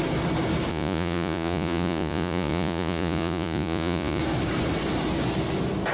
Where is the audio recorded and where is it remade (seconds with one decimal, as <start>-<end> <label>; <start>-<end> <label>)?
0.0-0.7 recorded; 0.7-4.2 remade; 4.2-5.9 recorded